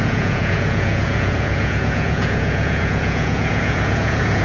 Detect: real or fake fake